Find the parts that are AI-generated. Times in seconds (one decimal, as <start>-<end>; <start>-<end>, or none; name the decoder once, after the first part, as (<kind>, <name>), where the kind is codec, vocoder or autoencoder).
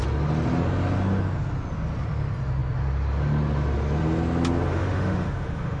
4.7-5.8 (autoencoder, DAC-VAE)